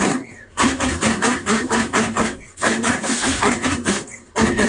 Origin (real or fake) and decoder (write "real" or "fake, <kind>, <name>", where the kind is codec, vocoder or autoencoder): fake, codec, SNAC